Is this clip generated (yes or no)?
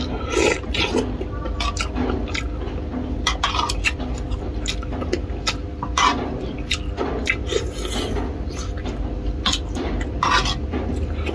no